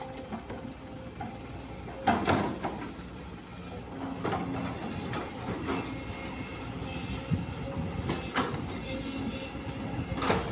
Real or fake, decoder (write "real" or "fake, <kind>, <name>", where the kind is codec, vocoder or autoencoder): real